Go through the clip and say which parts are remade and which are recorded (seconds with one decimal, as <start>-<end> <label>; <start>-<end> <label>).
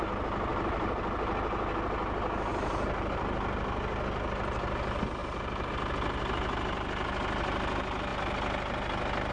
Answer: 0.0-0.5 recorded; 0.5-1.0 remade; 1.0-2.5 recorded; 2.5-3.2 remade; 3.2-5.2 recorded; 5.2-5.7 remade; 5.7-9.3 recorded